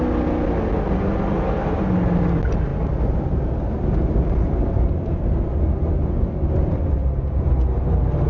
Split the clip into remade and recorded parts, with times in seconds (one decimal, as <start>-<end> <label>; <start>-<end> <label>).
0.0-8.3 recorded